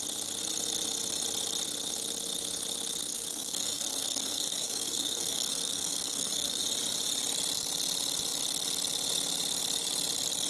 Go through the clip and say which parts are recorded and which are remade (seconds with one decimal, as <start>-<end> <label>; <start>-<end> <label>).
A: 0.0-3.0 recorded; 3.0-6.6 remade; 6.6-10.5 recorded